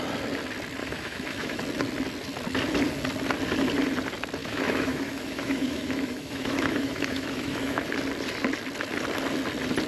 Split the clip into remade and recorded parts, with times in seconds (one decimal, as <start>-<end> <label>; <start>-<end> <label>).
0.0-0.8 recorded; 0.8-1.6 remade; 1.6-4.4 recorded; 4.4-7.9 remade; 7.9-9.9 recorded

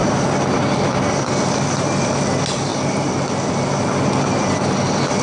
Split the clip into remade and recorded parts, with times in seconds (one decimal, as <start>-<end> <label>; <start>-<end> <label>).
0.0-5.2 recorded

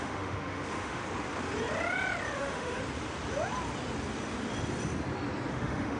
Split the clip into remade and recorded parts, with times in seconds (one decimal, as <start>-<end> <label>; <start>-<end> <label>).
0.0-1.0 remade; 1.0-2.4 recorded; 2.4-2.8 remade; 2.8-5.5 recorded; 5.5-6.0 remade

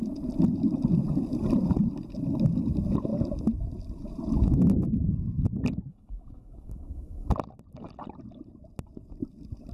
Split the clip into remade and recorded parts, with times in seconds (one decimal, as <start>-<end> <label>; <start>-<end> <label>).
0.0-5.9 recorded; 5.9-7.3 remade; 7.3-9.7 recorded

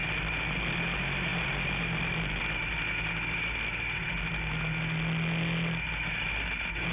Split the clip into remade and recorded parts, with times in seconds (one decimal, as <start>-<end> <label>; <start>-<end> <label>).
0.0-6.9 recorded

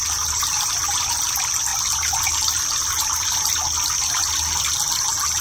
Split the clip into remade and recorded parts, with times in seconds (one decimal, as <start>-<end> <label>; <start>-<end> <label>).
0.0-5.4 recorded

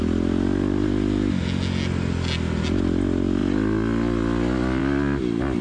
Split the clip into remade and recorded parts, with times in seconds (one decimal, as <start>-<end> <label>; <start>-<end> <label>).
0.0-5.6 recorded

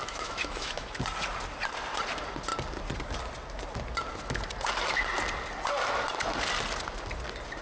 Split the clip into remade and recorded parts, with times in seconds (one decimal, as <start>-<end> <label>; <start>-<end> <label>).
0.0-0.9 remade; 0.9-7.6 recorded